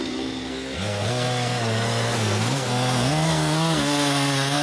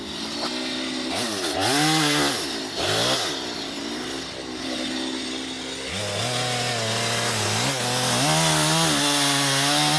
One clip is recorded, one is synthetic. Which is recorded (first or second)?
second